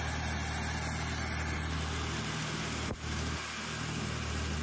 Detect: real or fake real